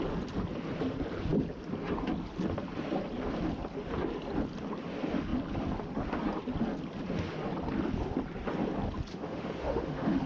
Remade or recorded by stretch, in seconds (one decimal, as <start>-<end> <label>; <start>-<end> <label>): 0.0-9.1 recorded; 9.1-10.3 remade